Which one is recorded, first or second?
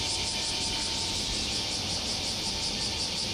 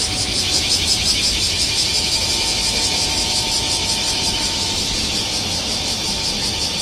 first